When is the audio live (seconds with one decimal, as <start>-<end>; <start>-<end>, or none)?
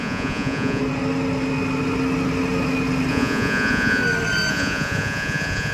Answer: 0.8-3.1; 4.0-4.5